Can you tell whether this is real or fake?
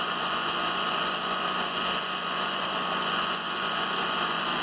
fake